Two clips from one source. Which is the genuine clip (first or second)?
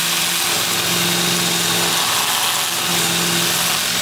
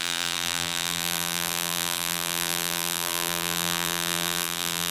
first